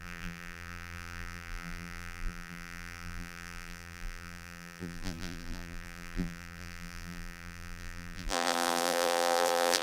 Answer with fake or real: fake